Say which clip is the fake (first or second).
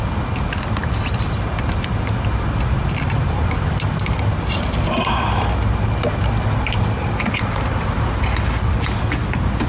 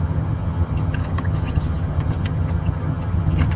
second